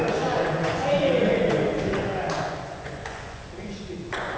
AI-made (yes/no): yes